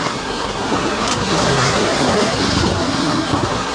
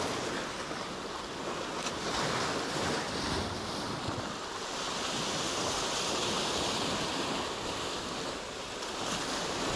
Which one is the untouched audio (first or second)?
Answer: second